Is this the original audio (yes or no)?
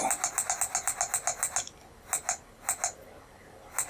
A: yes